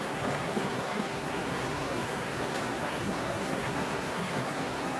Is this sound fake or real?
fake